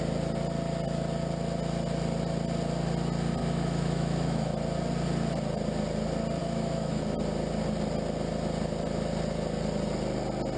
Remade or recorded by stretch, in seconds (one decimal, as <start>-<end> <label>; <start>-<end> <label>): 0.0-3.4 recorded; 3.4-4.5 remade; 4.5-6.4 recorded; 6.4-7.0 remade; 7.0-10.6 recorded